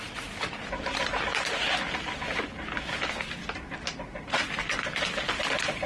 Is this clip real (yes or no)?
yes